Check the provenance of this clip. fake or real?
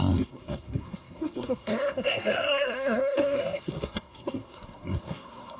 fake